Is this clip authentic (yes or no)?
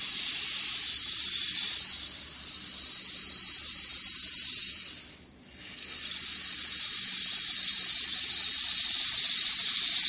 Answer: yes